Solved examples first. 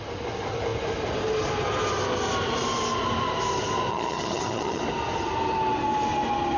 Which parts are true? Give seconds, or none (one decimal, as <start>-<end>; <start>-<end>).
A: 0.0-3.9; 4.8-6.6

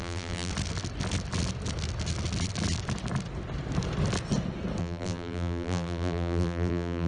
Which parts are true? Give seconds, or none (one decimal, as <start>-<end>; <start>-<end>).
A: 0.5-4.8

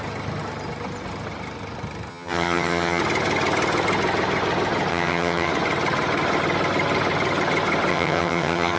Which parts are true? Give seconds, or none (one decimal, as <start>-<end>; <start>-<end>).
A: 0.0-2.1; 3.0-4.9; 5.5-7.9

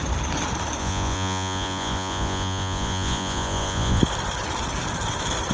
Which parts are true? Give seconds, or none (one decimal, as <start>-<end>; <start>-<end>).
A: 0.0-0.8; 4.0-5.5

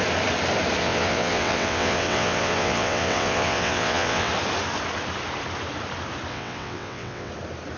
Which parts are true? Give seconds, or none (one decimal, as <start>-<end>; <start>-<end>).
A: 0.0-0.8; 4.3-6.3; 7.3-7.8

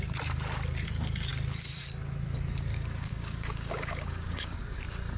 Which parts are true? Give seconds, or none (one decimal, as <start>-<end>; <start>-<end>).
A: 0.0-2.7; 4.8-5.2

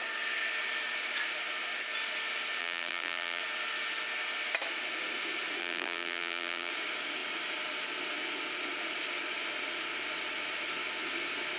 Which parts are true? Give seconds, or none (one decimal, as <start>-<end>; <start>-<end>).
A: 0.0-2.6; 3.4-5.6; 6.7-11.6

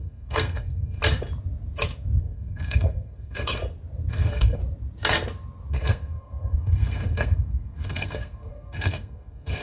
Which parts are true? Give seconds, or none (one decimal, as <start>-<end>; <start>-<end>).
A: 1.0-2.2; 3.6-4.1; 4.6-5.7